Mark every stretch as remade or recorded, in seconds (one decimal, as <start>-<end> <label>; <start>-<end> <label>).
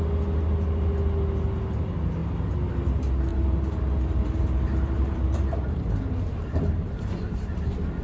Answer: 0.0-3.3 recorded; 3.3-7.6 remade; 7.6-8.0 recorded